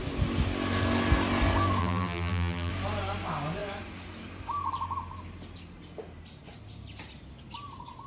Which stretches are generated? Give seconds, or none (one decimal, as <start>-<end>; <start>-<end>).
1.8-2.7